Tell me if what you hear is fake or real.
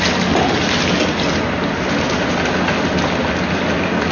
real